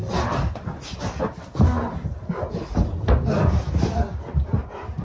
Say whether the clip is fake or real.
real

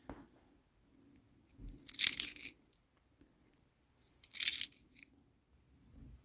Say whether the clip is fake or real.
real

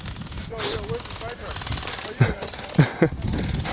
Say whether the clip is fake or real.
real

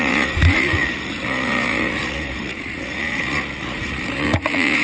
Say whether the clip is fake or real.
fake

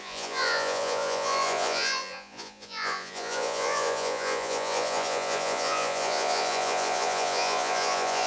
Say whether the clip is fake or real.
fake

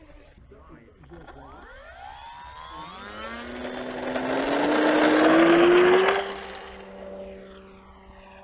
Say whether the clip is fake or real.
real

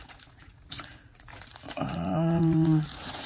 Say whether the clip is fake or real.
fake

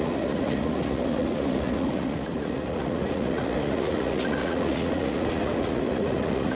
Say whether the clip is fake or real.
fake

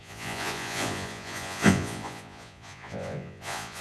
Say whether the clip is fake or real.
fake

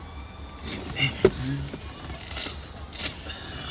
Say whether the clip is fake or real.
real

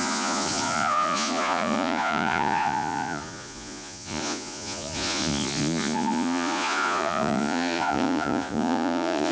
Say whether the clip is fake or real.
fake